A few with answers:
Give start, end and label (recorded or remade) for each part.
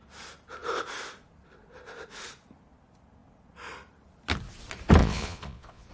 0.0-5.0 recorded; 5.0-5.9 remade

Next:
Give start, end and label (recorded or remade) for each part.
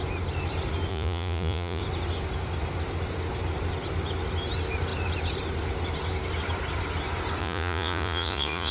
0.0-0.9 recorded; 0.9-1.8 remade; 1.8-7.4 recorded; 7.4-8.7 remade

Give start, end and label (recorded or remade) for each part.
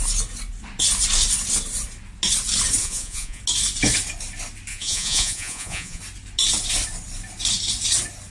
0.0-2.8 recorded; 2.8-3.4 remade; 3.4-4.7 recorded; 4.7-6.0 remade; 6.0-8.3 recorded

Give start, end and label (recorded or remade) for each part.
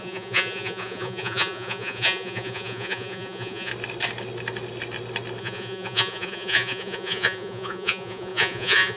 0.0-3.7 remade; 3.7-5.4 recorded; 5.4-9.0 remade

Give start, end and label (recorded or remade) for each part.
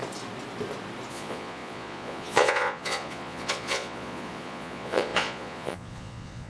0.0-1.1 recorded; 1.1-6.5 remade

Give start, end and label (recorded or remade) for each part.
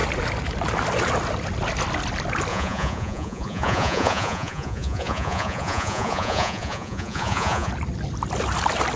0.0-2.5 recorded; 2.5-7.7 remade; 7.7-9.0 recorded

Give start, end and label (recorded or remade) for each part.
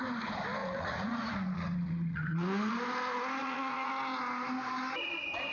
0.0-0.6 recorded; 0.6-2.7 remade; 2.7-3.4 recorded; 3.4-3.9 remade; 3.9-5.5 recorded